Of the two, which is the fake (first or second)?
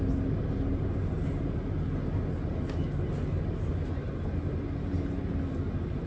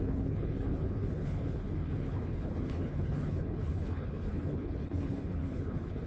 second